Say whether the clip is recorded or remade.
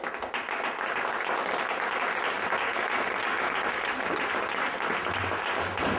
recorded